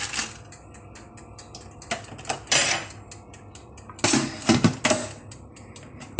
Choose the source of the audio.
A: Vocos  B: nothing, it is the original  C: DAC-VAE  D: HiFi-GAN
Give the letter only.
B